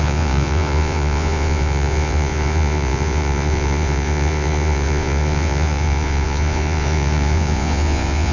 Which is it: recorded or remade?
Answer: remade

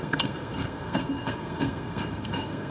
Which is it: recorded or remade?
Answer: remade